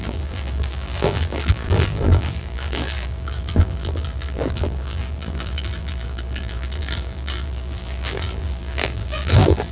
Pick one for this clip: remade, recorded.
remade